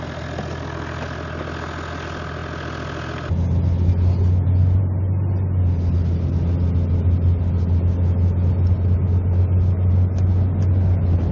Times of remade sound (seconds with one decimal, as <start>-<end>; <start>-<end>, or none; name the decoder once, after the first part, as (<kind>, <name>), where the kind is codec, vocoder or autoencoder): none